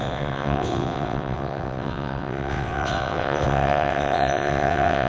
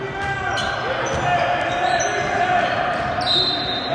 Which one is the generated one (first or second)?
first